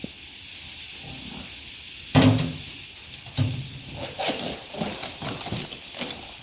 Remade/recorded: recorded